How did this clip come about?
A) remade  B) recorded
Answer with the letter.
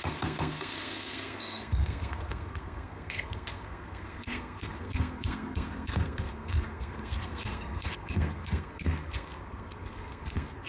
A